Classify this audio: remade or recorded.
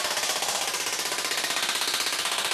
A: recorded